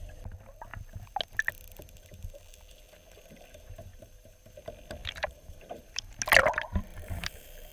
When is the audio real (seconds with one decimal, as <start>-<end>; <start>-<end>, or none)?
0.0-3.9; 4.5-5.0; 6.1-6.9